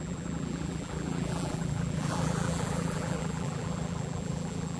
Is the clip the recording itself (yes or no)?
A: no